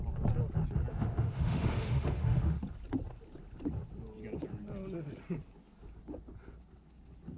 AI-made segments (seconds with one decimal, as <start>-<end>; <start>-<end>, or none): 0.9-2.6